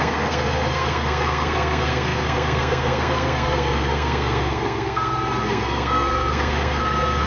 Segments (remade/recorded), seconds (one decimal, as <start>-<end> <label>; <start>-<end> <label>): 0.0-7.3 remade